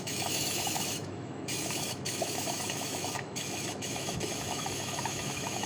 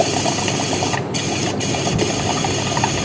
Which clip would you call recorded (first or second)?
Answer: second